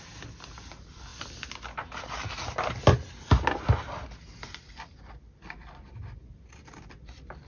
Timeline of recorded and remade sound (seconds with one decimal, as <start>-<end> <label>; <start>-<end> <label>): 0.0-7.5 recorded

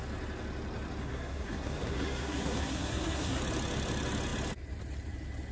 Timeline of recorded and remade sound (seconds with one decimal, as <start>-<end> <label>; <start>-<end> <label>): 0.0-1.0 recorded; 1.0-3.4 remade; 3.4-5.5 recorded

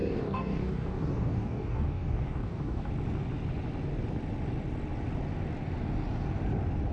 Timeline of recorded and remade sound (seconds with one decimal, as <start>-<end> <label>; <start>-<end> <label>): 0.0-2.9 remade; 2.9-6.9 recorded

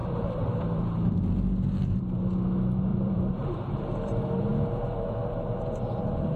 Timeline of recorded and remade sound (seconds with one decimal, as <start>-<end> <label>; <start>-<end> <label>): 0.0-1.1 remade; 1.1-2.9 recorded; 2.9-3.8 remade; 3.8-6.4 recorded

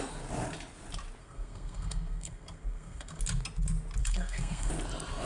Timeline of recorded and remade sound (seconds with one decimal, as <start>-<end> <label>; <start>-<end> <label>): 0.0-1.2 recorded; 1.2-3.2 remade; 3.2-4.0 recorded; 4.0-4.7 remade; 4.7-5.3 recorded

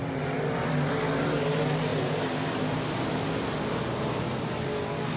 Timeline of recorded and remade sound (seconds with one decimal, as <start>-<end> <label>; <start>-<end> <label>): 0.0-5.2 recorded